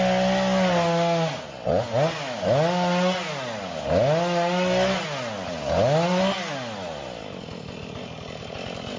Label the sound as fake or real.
real